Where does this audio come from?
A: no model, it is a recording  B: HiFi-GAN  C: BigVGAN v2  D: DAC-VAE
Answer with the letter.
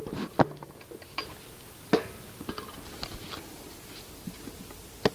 A